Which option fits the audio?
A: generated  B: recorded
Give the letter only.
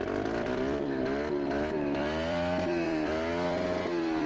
A